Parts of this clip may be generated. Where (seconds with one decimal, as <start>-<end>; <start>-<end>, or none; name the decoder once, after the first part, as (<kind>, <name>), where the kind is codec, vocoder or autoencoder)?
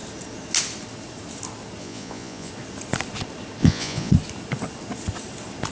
1.8-2.5 (vocoder, Vocos); 3.6-4.1